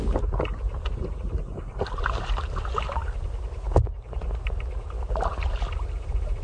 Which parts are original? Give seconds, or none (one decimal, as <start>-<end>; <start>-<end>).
0.0-6.4